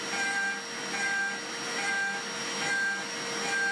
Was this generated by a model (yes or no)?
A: no